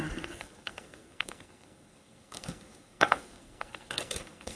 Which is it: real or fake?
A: fake